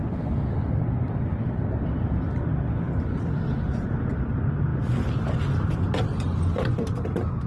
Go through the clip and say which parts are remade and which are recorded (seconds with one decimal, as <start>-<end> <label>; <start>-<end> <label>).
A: 0.0-7.5 recorded